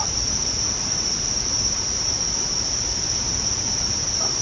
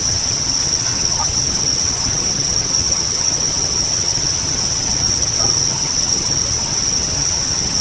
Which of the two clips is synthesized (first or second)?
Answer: second